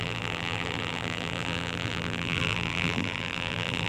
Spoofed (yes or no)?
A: yes